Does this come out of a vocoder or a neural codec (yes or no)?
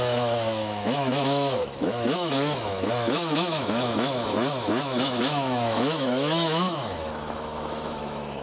yes